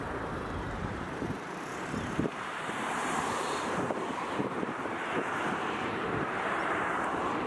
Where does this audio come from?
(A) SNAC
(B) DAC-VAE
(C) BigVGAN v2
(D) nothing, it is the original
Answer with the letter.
C